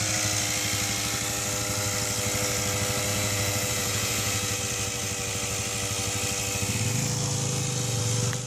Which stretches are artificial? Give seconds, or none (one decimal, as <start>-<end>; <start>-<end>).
3.1-4.6